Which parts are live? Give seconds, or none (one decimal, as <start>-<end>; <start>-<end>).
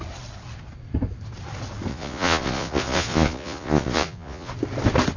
0.0-1.9; 4.5-5.2